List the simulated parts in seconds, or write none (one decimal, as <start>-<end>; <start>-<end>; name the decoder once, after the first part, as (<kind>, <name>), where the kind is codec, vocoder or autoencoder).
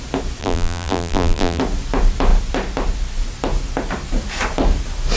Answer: 0.4-1.6 (vocoder, BigVGAN v2)